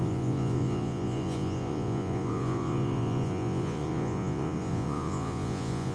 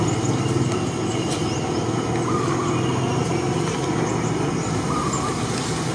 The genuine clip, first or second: second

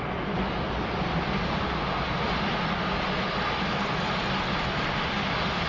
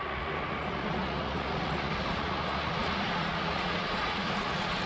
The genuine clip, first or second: first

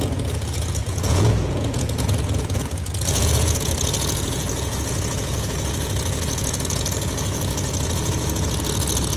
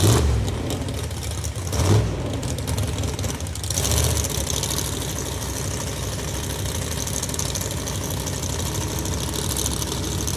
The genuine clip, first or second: second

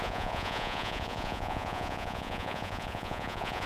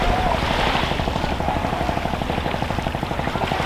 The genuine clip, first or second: second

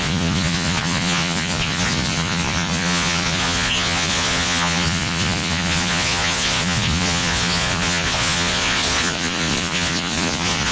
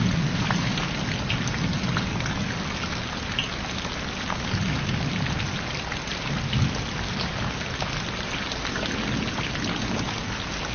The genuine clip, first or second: second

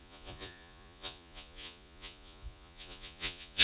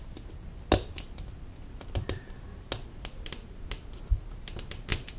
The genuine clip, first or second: second